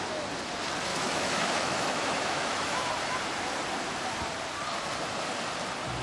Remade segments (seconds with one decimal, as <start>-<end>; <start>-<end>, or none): 0.9-2.9